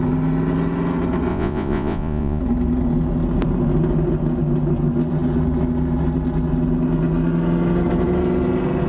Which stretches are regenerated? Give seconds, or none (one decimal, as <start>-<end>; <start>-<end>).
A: 1.3-2.4